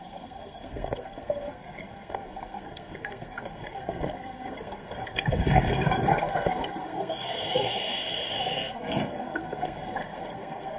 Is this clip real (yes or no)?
no